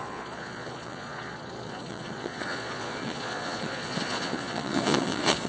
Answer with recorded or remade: remade